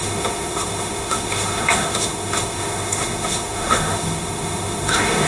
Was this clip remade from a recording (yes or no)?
yes